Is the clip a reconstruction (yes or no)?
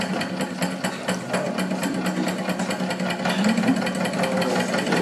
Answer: no